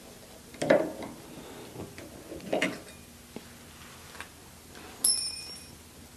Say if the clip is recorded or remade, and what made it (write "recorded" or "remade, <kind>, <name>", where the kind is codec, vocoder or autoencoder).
recorded